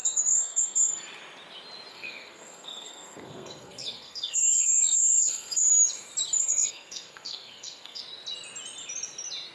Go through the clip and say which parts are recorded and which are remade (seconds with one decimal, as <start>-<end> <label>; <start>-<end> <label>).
0.0-0.9 remade; 0.9-1.9 recorded; 1.9-5.7 remade; 5.7-6.4 recorded; 6.4-8.0 remade; 8.0-9.5 recorded